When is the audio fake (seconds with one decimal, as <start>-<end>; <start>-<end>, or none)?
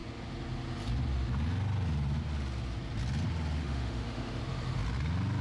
3.6-4.4